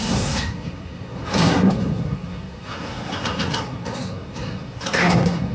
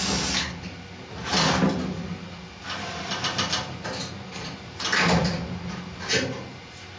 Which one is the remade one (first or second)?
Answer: first